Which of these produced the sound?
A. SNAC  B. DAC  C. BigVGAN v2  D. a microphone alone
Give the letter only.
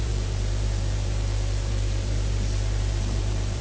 C